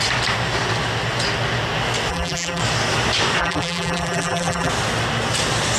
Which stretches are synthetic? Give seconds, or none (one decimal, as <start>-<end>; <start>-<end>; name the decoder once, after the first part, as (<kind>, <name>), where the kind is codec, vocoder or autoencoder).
2.1-2.6 (vocoder, BigVGAN v2); 3.4-4.7